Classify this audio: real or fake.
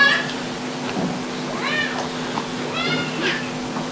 real